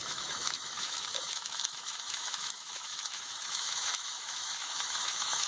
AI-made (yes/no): yes